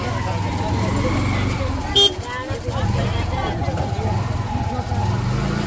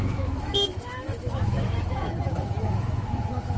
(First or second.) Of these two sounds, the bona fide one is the first